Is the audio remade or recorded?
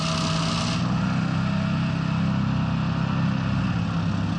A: recorded